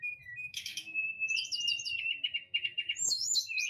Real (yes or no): no